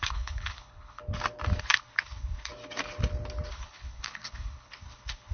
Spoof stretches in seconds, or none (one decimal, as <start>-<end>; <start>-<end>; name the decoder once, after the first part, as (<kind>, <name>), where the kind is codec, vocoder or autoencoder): 0.0-1.0 (codec, HILCodec); 1.6-2.5; 3.5-5.3

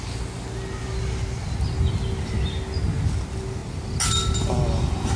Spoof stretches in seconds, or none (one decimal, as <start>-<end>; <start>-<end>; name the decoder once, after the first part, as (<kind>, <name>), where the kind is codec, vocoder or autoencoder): none

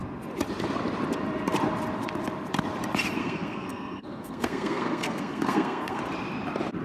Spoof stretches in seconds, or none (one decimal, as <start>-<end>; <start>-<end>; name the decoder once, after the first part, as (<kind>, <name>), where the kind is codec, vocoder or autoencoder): 3.2-6.0 (codec, SNAC)